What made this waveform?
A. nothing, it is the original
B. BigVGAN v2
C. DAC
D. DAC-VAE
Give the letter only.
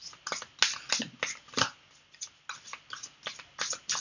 A